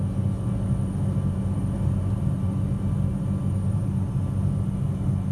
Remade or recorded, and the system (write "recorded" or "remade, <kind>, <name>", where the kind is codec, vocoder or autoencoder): recorded